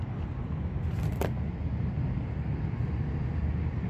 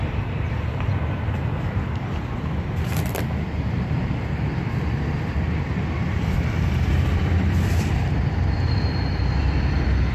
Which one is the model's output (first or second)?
second